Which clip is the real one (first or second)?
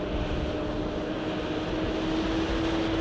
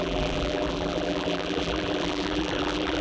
first